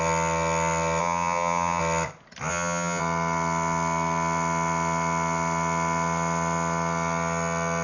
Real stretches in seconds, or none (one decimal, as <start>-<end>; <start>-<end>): 0.0-1.0; 1.8-2.5; 3.0-7.8